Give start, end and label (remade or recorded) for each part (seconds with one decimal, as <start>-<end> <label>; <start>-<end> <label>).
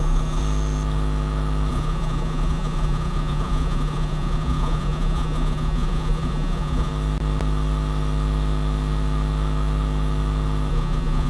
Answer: 0.0-0.4 remade; 0.4-1.7 recorded; 1.7-6.9 remade; 6.9-10.7 recorded; 10.7-11.3 remade